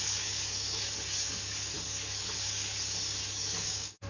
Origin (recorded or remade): remade